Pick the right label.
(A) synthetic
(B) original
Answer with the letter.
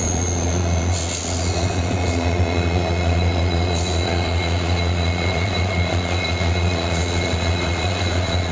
A